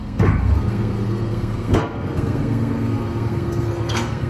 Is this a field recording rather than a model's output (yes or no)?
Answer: no